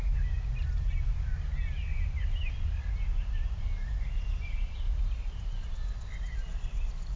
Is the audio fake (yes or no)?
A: no